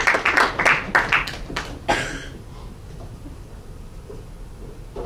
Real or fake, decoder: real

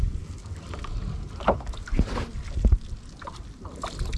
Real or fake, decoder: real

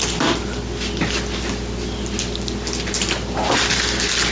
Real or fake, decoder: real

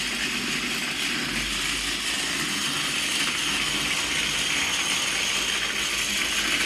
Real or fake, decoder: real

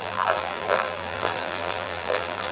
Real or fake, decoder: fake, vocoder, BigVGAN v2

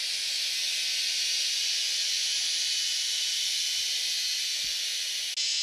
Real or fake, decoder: real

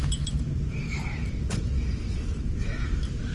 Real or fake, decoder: fake, vocoder, BigVGAN v2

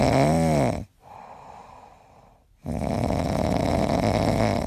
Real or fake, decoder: real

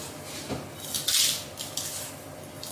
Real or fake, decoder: real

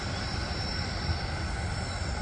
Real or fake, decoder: fake, vocoder, BigVGAN v2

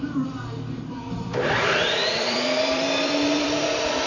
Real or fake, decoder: fake, vocoder, BigVGAN v2